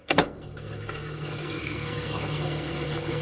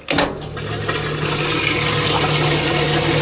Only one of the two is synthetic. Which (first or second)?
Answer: first